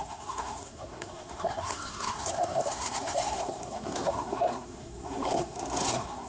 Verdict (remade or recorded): remade